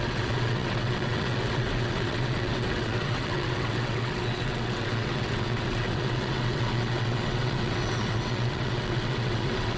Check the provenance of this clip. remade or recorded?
remade